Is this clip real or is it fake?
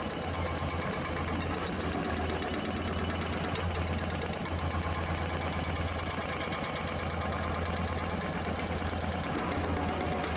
real